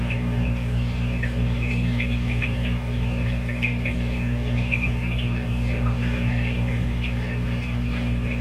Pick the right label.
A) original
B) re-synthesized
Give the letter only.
B